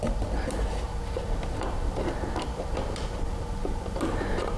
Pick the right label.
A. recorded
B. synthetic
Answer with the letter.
B